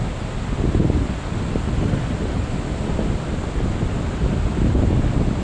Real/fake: real